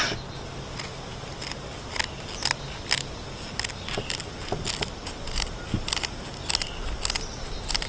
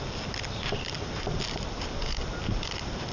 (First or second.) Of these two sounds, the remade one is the second